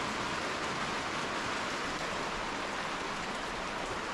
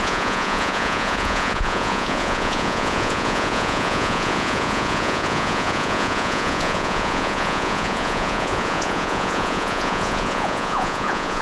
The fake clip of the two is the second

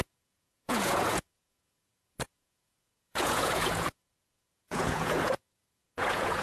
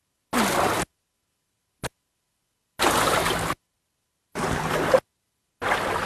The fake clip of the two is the first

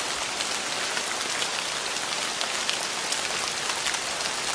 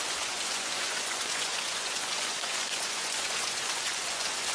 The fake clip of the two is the second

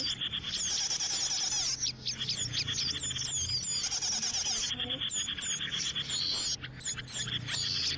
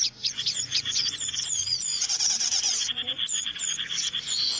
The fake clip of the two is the second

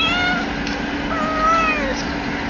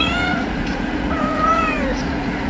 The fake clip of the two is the second